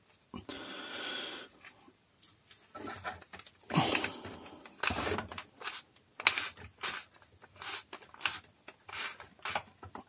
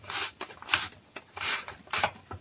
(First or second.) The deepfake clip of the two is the second